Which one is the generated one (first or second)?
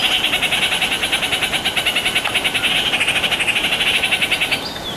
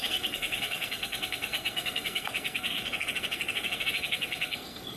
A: second